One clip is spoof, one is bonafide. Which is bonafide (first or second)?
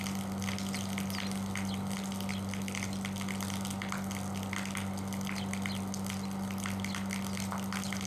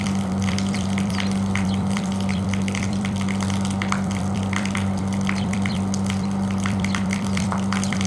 first